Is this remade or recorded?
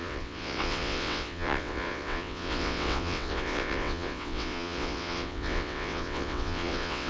remade